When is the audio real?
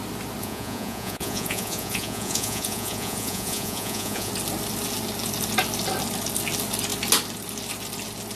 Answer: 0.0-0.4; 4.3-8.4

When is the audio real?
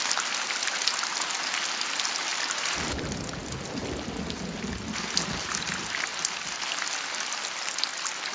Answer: 0.0-8.3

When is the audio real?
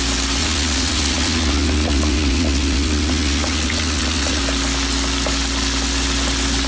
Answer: 0.0-0.4; 4.4-6.7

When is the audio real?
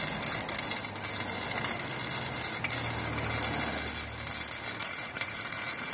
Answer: 0.0-4.8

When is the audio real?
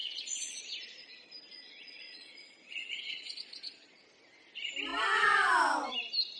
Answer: 0.6-1.5; 4.0-6.4